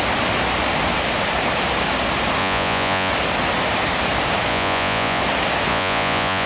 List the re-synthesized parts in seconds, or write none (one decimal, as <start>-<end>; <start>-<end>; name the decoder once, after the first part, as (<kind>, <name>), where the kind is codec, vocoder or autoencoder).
2.4-3.1 (vocoder, Vocos); 4.5-5.2; 5.7-6.5